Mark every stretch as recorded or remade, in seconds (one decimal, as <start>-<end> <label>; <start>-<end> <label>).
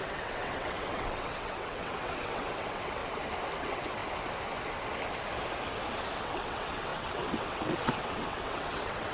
0.0-3.0 remade; 3.0-3.6 recorded; 3.6-4.0 remade; 4.0-6.2 recorded; 6.2-9.1 remade